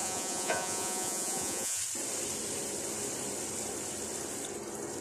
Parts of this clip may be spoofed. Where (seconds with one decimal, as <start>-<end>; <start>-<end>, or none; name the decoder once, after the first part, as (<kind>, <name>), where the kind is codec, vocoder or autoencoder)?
0.0-1.8 (vocoder, Vocos)